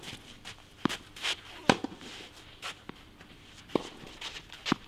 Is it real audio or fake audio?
fake